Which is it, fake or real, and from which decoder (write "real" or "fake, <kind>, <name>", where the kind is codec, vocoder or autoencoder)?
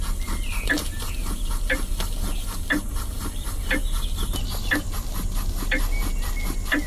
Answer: real